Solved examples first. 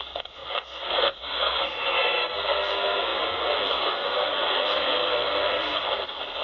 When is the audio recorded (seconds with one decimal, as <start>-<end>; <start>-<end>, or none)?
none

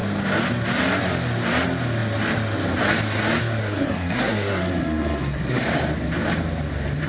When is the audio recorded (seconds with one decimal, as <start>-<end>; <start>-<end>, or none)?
0.0-3.6; 5.6-7.1

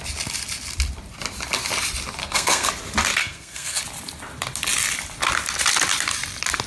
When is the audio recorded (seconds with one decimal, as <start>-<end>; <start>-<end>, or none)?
0.0-2.2; 2.7-3.2; 3.8-6.7

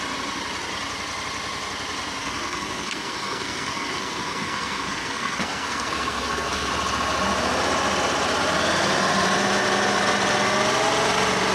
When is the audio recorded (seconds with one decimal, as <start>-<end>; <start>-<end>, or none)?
0.0-2.2; 6.7-11.5

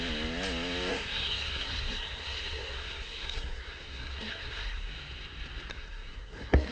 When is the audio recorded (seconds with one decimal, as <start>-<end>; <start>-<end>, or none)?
0.0-0.9; 4.9-5.7